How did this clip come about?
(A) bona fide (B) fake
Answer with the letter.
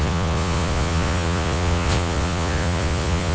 B